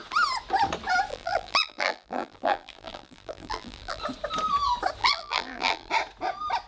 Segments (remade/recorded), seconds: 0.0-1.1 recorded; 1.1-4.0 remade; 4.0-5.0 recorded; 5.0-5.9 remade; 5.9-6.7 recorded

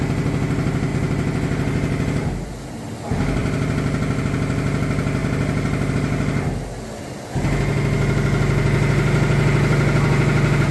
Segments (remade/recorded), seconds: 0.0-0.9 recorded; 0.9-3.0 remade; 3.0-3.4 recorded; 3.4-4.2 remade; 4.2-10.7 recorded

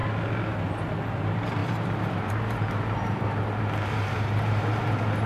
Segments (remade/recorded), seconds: 0.0-1.6 recorded; 1.6-4.8 remade; 4.8-5.3 recorded